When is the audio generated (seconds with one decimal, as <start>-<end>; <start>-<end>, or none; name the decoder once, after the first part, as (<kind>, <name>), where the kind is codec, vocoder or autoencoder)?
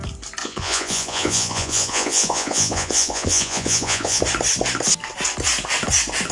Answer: 0.4-4.2 (vocoder, Vocos)